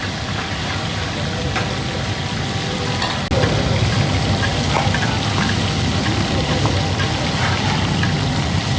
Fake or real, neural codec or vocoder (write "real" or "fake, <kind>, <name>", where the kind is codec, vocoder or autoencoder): real